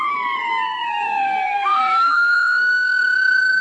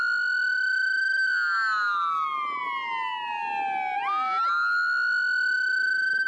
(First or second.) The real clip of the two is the second